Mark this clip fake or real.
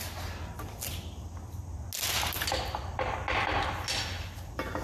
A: real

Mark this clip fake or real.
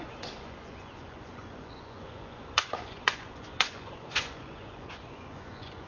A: fake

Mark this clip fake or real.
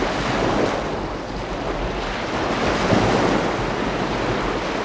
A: real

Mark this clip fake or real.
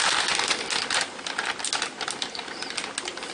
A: real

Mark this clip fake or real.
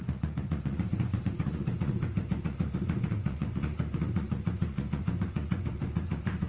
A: fake